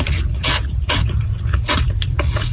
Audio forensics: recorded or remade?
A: remade